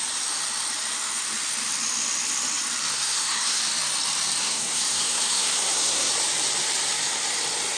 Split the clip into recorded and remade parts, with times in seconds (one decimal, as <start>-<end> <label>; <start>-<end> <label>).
0.0-2.9 recorded; 2.9-3.6 remade; 3.6-4.4 recorded; 4.4-6.1 remade; 6.1-7.8 recorded